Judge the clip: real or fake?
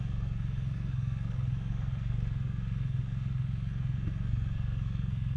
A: fake